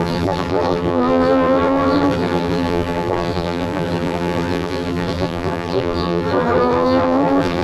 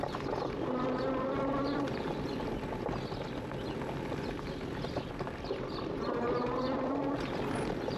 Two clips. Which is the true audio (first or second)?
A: second